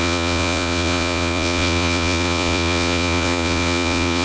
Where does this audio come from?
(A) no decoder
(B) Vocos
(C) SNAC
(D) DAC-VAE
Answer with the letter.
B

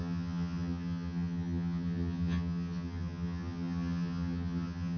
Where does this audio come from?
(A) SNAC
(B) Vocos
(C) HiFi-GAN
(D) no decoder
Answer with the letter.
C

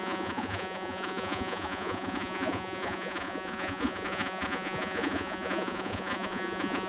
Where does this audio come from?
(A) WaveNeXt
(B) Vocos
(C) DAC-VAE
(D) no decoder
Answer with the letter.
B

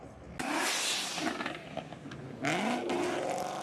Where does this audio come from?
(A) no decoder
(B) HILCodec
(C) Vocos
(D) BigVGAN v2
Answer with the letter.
A